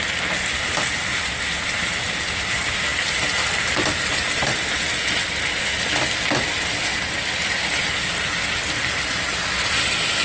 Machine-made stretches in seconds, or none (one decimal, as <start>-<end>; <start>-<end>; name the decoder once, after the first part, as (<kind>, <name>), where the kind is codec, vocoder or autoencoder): 6.9-9.7 (vocoder, BigVGAN v2)